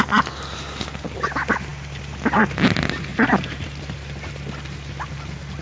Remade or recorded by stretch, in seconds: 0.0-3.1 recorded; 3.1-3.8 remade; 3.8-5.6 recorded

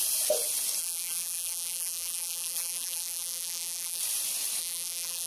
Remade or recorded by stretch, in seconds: 0.0-0.8 recorded; 0.8-4.0 remade; 4.0-4.6 recorded; 4.6-5.3 remade

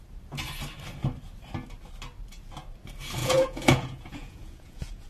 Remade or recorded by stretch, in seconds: 0.0-3.2 recorded; 3.2-5.1 remade

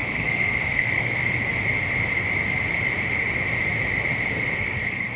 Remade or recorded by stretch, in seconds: 0.0-1.2 remade; 1.2-4.3 recorded; 4.3-5.2 remade

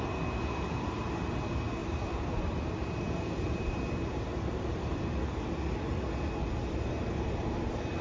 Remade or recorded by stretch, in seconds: 0.0-1.8 recorded; 1.8-5.0 remade; 5.0-8.0 recorded